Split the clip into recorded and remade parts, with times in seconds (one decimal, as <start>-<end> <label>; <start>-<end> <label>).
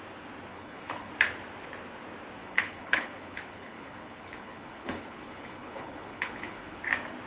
0.0-0.5 recorded; 0.5-1.1 remade; 1.1-2.4 recorded; 2.4-6.8 remade; 6.8-7.3 recorded